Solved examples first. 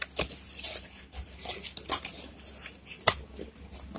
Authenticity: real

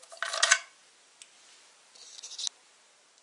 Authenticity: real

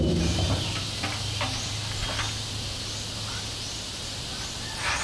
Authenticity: real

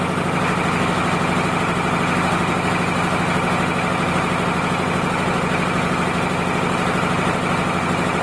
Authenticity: real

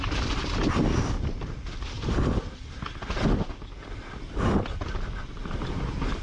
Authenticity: real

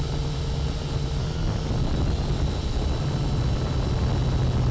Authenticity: real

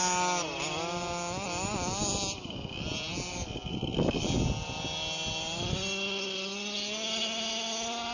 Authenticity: real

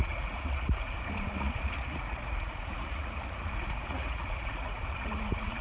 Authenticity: fake